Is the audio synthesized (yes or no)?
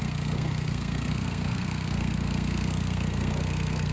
yes